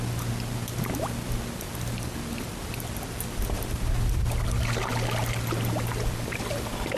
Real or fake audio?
real